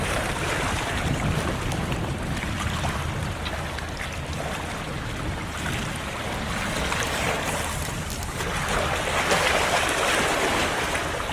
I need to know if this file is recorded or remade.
recorded